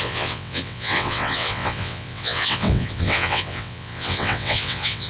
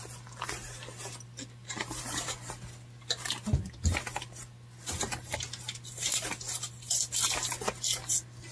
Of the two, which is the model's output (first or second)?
first